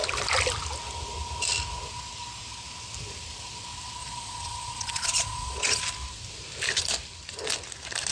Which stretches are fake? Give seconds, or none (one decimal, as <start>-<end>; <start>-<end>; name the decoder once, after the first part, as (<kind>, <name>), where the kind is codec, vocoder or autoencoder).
4.0-5.8 (vocoder, Vocos)